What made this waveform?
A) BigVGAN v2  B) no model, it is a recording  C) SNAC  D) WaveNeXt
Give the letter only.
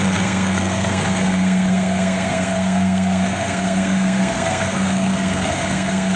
C